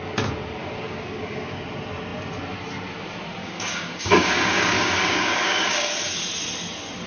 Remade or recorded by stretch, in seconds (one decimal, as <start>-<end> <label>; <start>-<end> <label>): 0.0-0.6 recorded; 0.6-1.6 remade; 1.6-3.4 recorded; 3.4-5.9 remade; 5.9-7.1 recorded